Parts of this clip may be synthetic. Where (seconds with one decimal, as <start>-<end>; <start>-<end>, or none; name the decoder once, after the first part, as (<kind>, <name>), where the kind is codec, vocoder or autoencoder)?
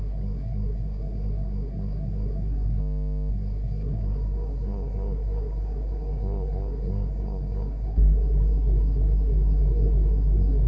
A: 0.0-2.8 (codec, SNAC); 3.3-10.7